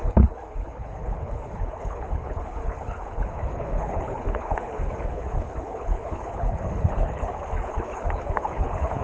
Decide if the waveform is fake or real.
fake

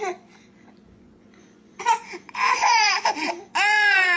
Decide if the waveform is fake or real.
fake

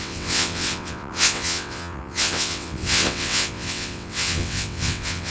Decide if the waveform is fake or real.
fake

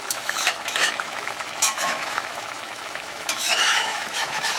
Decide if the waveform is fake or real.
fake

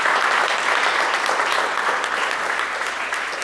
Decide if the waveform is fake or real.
real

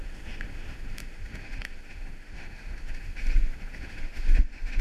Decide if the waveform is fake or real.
fake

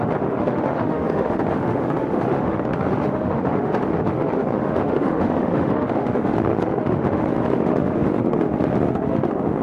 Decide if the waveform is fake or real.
fake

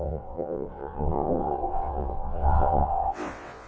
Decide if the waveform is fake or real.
fake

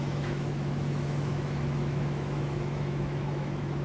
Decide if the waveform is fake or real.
fake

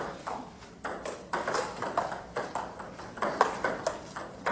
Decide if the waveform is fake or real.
real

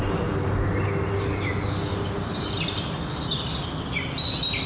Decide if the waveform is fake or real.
real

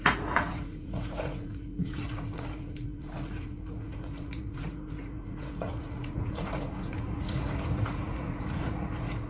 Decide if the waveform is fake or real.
fake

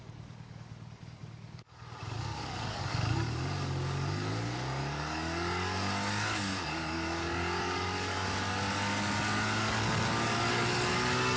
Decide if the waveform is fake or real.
fake